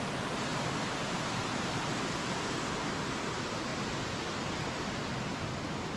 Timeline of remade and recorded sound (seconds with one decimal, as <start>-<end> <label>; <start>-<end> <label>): 0.0-6.0 recorded